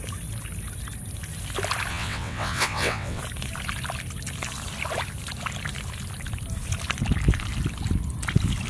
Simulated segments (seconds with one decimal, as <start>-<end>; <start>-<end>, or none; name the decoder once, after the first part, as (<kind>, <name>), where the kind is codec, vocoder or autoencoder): 1.9-3.2 (vocoder, WaveNeXt)